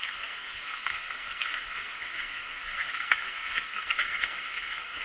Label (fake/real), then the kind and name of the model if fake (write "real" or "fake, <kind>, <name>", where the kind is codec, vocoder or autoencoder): fake, codec, SNAC